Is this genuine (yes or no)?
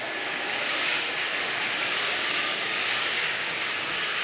no